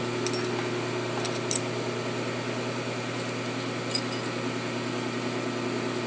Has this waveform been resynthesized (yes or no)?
no